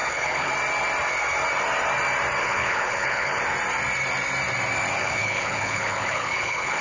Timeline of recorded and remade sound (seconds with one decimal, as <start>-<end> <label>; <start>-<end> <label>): 0.0-0.5 remade; 0.5-2.4 recorded; 2.4-3.4 remade; 3.4-5.0 recorded; 5.0-6.8 remade